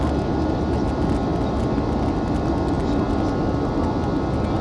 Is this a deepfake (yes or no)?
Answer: no